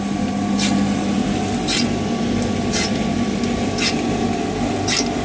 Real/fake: real